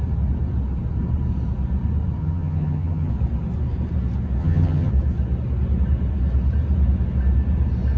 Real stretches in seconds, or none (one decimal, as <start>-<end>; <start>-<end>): 0.0-2.2; 3.1-4.4; 4.9-8.0